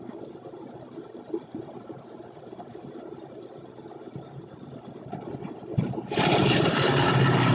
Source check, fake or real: fake